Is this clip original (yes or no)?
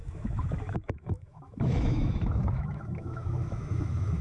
no